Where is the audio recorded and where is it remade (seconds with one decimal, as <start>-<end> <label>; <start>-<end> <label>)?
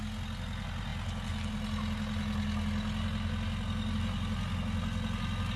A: 0.0-5.6 recorded